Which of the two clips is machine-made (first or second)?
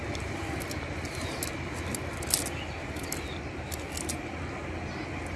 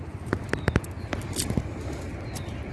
second